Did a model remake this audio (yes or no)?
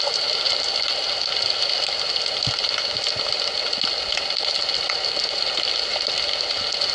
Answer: no